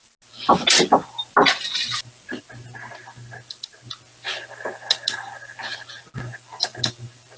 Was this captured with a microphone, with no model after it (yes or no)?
yes